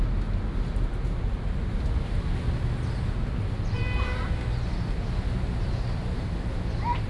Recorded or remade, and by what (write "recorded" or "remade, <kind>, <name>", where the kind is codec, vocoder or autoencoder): recorded